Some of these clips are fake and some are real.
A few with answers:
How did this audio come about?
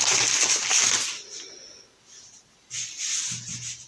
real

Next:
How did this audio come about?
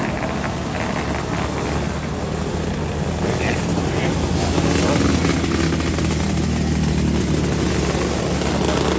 real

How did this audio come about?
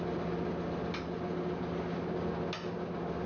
real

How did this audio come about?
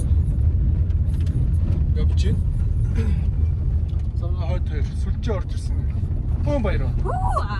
real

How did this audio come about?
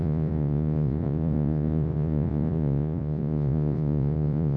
fake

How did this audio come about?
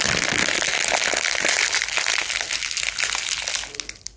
real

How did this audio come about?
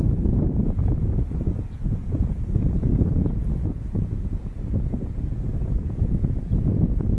fake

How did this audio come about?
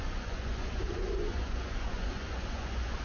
fake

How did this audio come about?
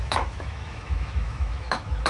fake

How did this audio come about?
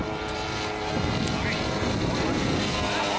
real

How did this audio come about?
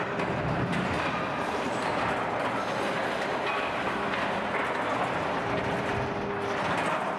real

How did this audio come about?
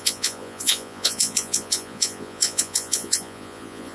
fake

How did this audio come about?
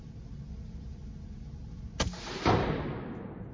real